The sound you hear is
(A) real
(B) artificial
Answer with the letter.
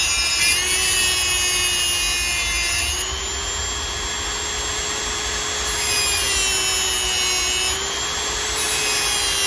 A